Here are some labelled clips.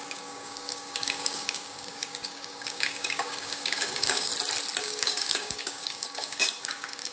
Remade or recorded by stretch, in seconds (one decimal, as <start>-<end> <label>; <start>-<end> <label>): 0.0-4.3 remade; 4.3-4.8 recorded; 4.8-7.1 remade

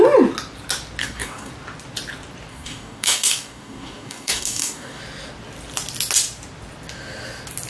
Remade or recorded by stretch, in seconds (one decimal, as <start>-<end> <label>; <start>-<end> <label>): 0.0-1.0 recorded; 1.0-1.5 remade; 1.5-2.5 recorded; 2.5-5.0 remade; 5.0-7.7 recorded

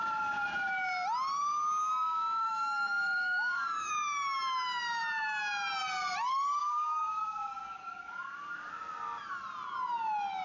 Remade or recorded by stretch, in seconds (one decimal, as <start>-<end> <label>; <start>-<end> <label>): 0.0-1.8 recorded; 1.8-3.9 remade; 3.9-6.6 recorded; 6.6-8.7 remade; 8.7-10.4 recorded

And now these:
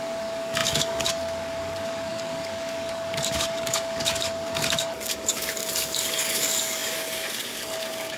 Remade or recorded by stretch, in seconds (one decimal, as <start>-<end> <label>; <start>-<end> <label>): 0.0-8.2 remade